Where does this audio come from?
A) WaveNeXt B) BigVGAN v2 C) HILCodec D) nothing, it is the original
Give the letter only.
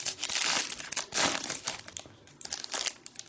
B